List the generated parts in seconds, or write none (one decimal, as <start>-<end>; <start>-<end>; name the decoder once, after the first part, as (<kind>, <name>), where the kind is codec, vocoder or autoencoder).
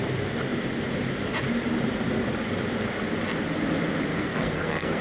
4.1-5.0 (codec, SNAC)